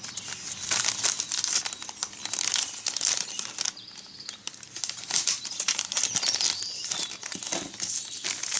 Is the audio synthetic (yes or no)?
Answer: no